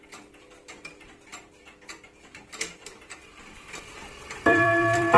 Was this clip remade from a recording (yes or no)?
yes